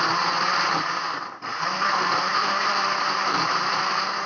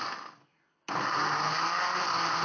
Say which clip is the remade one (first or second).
first